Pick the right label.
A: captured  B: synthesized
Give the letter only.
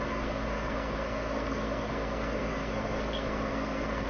B